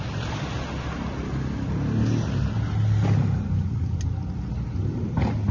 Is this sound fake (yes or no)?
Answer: no